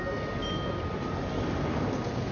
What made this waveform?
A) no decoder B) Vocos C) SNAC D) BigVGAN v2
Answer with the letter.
A